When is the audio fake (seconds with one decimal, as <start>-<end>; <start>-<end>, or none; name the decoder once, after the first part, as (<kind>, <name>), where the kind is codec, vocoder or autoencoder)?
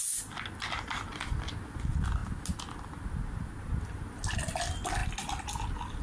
none